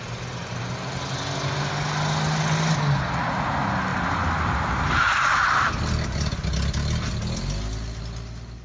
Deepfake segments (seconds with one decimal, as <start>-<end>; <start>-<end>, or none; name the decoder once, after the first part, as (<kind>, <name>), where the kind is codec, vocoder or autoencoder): 3.9-4.7 (vocoder, BigVGAN v2)